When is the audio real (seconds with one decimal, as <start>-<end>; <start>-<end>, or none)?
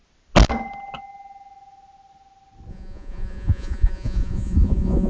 0.0-2.7